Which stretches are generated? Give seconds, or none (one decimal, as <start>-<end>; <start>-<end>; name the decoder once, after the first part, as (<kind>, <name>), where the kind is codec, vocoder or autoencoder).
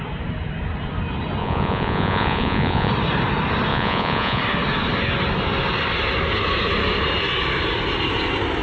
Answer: 1.4-2.9 (vocoder, Vocos); 3.7-4.4